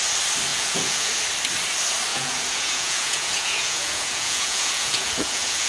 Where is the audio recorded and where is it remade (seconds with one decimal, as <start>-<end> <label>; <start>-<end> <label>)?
0.0-0.5 recorded; 0.5-1.2 remade; 1.2-2.1 recorded; 2.1-5.7 remade